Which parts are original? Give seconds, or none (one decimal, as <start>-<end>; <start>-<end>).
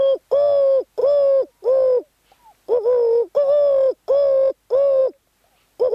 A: 0.0-5.9